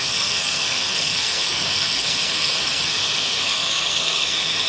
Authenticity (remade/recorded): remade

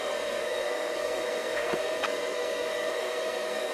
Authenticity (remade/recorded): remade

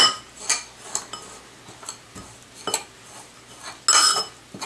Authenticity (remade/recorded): recorded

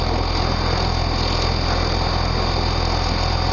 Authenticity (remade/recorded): recorded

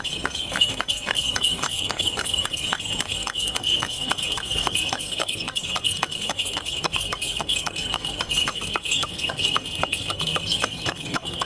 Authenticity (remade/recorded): remade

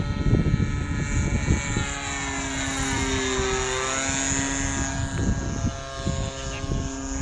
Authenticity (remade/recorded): recorded